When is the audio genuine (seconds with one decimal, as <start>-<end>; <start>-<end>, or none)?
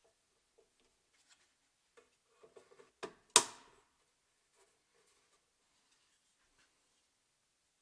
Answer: 0.0-7.8